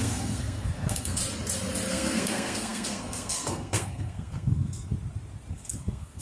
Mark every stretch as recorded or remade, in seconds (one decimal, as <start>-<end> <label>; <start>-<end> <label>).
0.0-1.2 remade; 1.2-1.9 recorded; 1.9-4.9 remade; 4.9-5.5 recorded; 5.5-6.2 remade